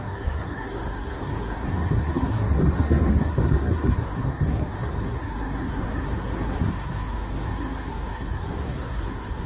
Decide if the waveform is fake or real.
fake